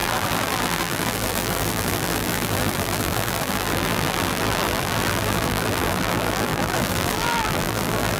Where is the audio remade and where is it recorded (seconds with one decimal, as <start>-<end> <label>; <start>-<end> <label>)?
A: 0.0-8.2 remade